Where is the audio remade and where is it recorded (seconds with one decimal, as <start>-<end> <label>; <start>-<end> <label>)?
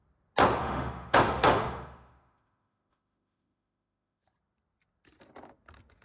0.0-0.6 recorded; 0.6-4.2 remade; 4.2-6.0 recorded